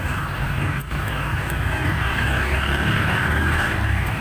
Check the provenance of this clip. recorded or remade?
remade